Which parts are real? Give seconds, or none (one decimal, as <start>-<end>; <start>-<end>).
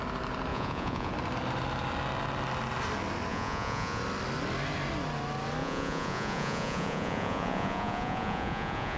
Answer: 0.0-0.5; 1.1-3.3; 4.0-5.6